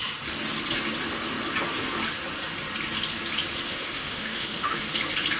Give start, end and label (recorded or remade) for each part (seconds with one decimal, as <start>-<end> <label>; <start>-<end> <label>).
0.0-3.7 recorded; 3.7-4.9 remade; 4.9-5.4 recorded